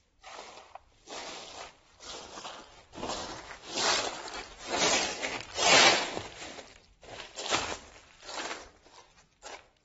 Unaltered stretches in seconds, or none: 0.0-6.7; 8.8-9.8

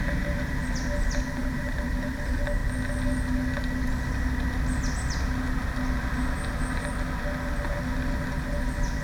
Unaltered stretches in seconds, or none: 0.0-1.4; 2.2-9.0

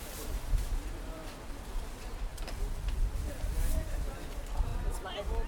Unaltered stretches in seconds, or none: 1.2-1.7; 2.3-3.3; 4.7-5.5

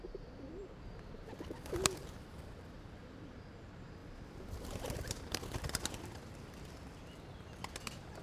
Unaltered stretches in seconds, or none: 4.0-4.5

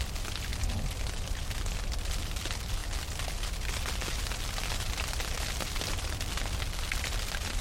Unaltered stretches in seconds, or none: 0.0-7.6

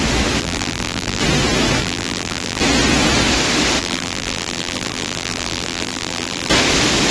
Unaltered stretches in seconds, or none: 0.0-0.4; 1.2-1.8; 2.6-3.8; 6.5-7.1

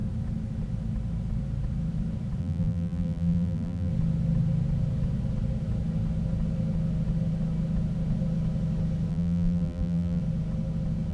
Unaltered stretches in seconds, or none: 0.0-2.4; 3.9-9.1; 10.2-11.1

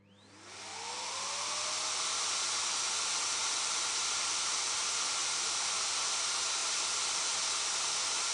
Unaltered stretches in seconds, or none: 0.0-3.4; 4.2-6.6; 7.2-8.3